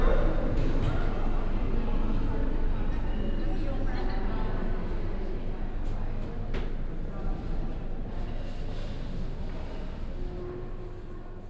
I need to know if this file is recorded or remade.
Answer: recorded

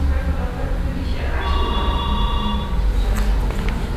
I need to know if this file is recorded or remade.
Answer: recorded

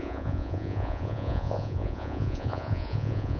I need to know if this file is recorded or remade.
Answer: remade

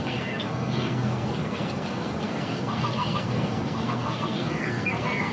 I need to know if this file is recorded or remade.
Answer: remade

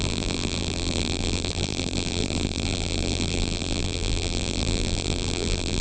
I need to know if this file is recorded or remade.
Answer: remade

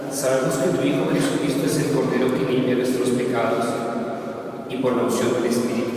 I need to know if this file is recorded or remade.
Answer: remade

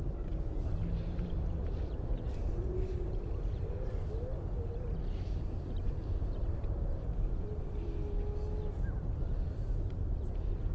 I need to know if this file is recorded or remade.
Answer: recorded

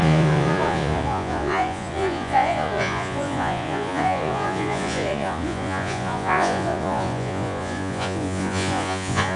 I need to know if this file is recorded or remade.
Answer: remade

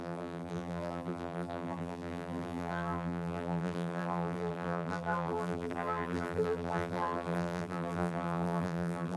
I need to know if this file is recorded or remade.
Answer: remade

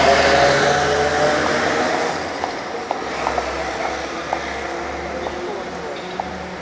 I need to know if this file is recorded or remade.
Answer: recorded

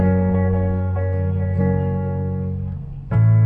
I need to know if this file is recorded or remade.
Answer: remade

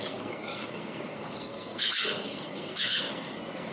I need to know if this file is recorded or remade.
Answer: remade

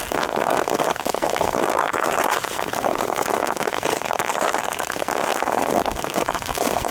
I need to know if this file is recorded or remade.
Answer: remade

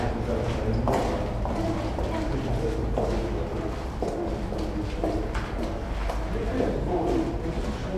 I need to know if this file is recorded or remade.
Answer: recorded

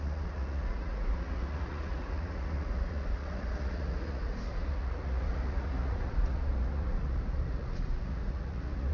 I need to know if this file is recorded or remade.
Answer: remade